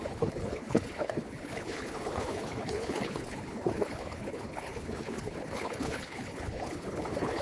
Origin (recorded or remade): remade